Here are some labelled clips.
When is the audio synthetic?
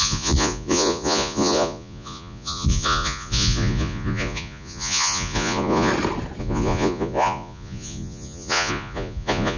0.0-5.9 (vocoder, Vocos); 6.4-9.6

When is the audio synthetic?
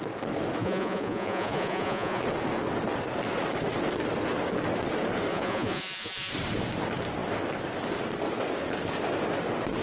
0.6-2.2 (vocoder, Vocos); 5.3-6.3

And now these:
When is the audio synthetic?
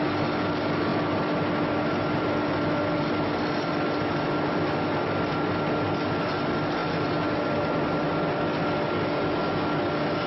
none